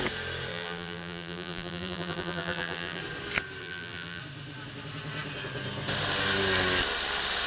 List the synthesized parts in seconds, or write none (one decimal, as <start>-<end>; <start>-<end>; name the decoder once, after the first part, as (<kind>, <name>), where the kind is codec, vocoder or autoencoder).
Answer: 0.5-3.0 (vocoder, BigVGAN v2); 3.6-4.2